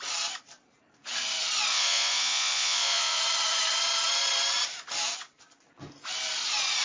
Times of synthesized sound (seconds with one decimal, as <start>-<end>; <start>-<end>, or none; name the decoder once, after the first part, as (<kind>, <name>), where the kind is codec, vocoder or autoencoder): 1.7-3.2 (vocoder, Vocos)